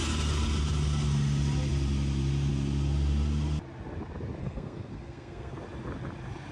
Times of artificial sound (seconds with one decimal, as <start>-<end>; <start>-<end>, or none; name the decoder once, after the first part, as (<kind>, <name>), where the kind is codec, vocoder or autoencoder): 4.4-5.6 (codec, SNAC)